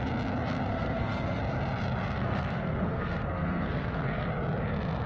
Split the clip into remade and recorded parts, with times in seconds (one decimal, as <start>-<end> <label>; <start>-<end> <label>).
0.0-0.7 recorded; 0.7-1.4 remade; 1.4-2.2 recorded; 2.2-4.3 remade; 4.3-5.1 recorded